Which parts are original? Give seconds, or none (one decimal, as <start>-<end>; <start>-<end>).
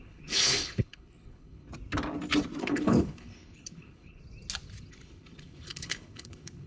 1.7-2.6; 4.2-4.9